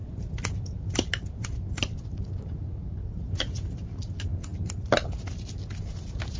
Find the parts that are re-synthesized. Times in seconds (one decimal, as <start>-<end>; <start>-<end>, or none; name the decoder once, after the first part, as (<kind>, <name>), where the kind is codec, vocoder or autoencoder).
none